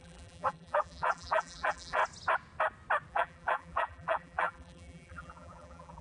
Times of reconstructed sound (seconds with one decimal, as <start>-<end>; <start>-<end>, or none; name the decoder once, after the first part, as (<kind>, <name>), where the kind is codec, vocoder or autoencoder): 0.0-2.0 (vocoder, BigVGAN v2); 3.1-6.0